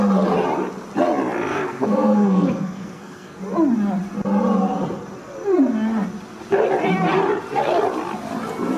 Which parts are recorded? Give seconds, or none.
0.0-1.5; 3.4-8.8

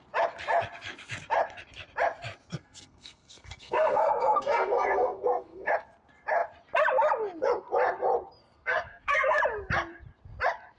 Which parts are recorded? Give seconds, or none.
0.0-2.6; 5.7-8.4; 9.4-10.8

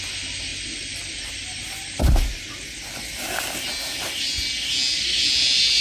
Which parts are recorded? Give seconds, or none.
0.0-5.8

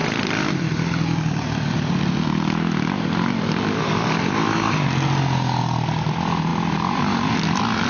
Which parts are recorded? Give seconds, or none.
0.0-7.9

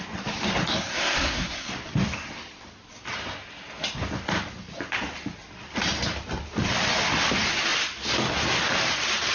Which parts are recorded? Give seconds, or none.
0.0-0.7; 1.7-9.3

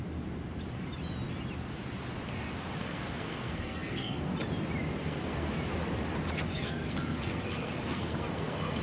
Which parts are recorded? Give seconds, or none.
0.0-2.8; 4.3-5.0; 5.5-6.5